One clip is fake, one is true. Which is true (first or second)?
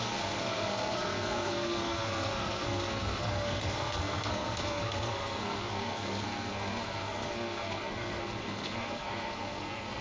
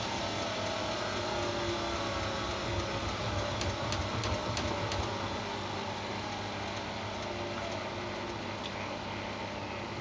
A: second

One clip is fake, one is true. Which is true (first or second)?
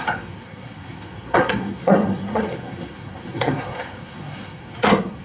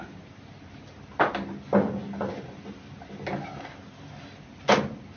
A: second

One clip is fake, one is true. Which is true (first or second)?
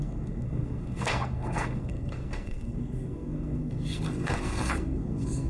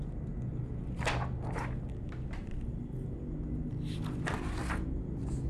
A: second